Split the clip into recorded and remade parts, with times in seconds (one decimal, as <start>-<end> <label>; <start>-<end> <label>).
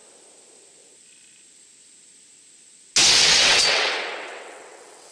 0.0-3.1 recorded; 3.1-5.1 remade